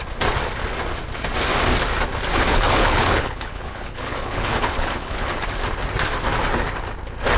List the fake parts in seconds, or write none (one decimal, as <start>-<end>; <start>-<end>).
2.5-5.4